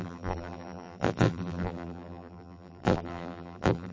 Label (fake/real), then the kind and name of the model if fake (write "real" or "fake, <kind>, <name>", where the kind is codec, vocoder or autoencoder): fake, vocoder, BigVGAN v2